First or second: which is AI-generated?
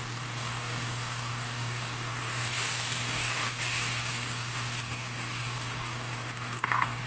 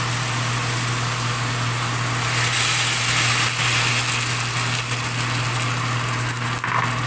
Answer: first